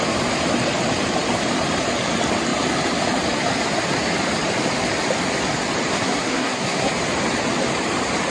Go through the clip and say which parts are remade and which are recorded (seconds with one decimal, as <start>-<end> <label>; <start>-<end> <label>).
0.0-5.9 recorded; 5.9-6.9 remade; 6.9-8.3 recorded